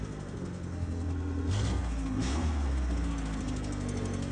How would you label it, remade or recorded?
remade